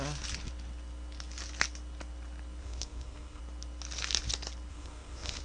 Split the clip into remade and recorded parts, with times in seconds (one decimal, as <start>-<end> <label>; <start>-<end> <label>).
0.0-2.6 recorded; 2.6-3.4 remade; 3.4-4.7 recorded; 4.7-5.4 remade

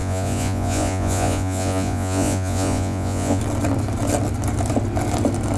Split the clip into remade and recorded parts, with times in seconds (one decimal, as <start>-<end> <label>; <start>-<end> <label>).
0.0-3.4 remade; 3.4-5.6 recorded

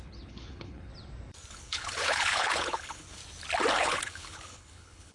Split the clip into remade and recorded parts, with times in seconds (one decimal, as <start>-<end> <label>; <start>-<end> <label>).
0.0-0.9 remade; 0.9-1.5 recorded; 1.5-3.2 remade; 3.2-3.7 recorded; 3.7-5.1 remade

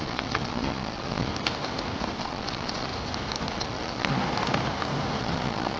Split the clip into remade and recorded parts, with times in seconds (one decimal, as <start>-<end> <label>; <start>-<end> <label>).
0.0-1.3 remade; 1.3-2.2 recorded; 2.2-2.9 remade; 2.9-3.5 recorded; 3.5-4.2 remade; 4.2-5.2 recorded; 5.2-5.8 remade